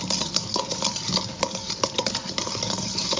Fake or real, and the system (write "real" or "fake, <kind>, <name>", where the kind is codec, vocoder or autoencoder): real